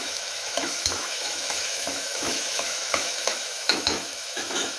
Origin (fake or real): fake